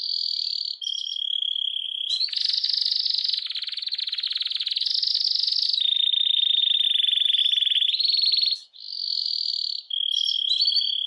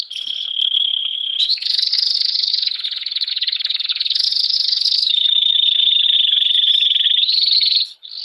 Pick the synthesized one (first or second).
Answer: second